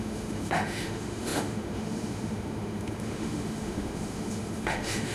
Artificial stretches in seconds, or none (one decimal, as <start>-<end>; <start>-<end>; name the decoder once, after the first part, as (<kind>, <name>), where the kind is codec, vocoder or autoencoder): 0.0-5.1 (autoencoder, DAC-VAE)